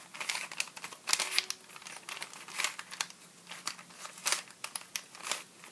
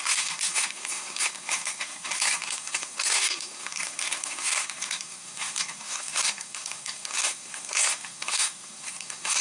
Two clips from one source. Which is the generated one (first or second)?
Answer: second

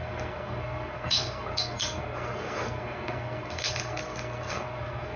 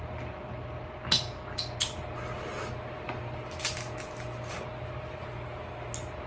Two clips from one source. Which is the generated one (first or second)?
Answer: first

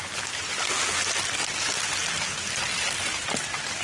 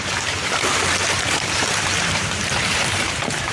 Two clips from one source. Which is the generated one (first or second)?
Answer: second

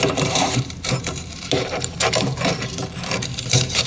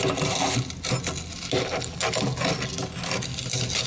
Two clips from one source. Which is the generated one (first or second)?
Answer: first